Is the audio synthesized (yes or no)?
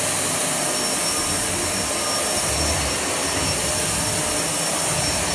no